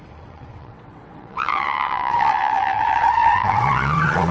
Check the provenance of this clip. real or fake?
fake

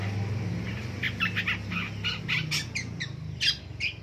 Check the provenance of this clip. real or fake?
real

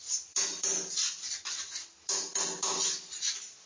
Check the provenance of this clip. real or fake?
real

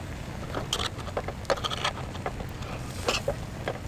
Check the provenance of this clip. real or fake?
real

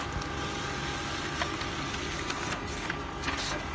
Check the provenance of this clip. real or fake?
real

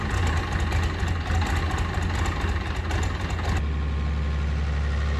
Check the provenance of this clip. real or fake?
real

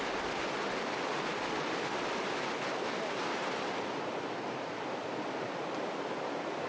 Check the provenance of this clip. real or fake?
real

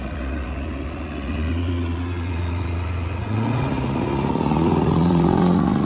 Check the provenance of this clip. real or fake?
fake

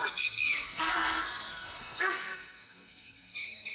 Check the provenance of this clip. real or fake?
fake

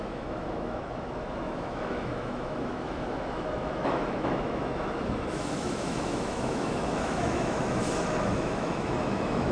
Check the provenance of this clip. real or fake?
fake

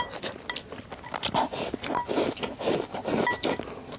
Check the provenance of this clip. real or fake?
real